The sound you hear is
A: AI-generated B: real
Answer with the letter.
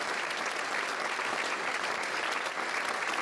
B